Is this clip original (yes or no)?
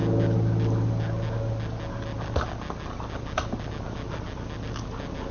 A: yes